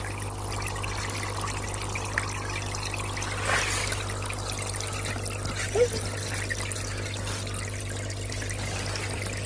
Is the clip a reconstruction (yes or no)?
no